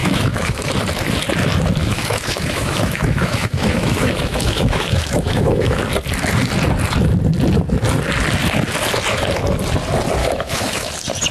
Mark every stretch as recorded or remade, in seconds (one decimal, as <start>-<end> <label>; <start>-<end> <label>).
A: 0.0-0.7 remade; 0.7-1.8 recorded; 1.8-5.8 remade; 5.8-10.2 recorded; 10.2-10.9 remade; 10.9-11.3 recorded